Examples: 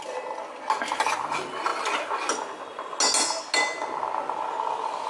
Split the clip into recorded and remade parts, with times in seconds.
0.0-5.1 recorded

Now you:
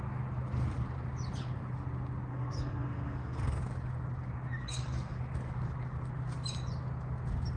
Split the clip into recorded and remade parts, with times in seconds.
0.0-2.3 recorded; 2.3-3.6 remade; 3.6-4.6 recorded; 4.6-5.2 remade; 5.2-7.6 recorded